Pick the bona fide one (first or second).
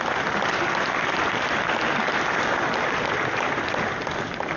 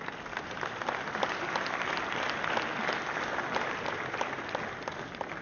second